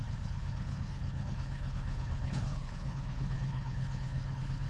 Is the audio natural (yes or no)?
no